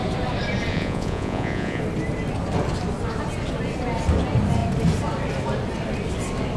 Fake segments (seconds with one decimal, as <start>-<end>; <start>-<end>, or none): 0.7-1.8